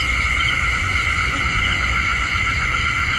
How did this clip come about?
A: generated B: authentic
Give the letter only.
A